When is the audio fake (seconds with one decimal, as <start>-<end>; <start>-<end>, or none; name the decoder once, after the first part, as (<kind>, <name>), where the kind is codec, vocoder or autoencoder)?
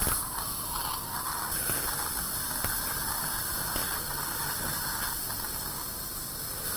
none